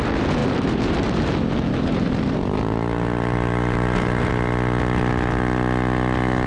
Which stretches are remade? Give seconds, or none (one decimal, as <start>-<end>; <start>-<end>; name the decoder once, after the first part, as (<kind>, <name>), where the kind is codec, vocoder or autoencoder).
0.4-4.3 (vocoder, BigVGAN v2)